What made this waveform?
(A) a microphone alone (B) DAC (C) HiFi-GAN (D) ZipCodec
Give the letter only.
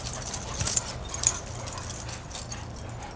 A